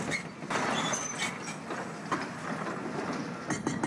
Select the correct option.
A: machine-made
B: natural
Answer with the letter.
B